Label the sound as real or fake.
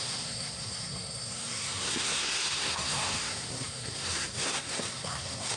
fake